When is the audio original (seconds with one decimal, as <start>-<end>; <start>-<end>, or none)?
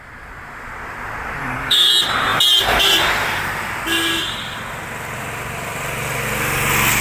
0.0-1.4; 1.9-7.0